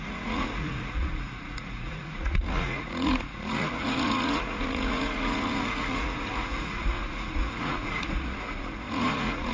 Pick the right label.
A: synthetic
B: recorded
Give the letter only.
A